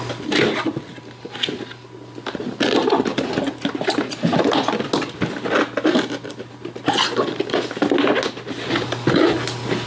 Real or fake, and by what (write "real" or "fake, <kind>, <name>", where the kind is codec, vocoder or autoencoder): real